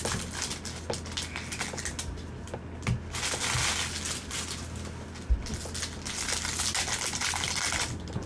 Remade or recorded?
recorded